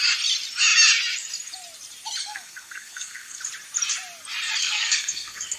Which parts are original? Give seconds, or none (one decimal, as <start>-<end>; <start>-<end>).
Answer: 0.0-2.2; 3.4-4.6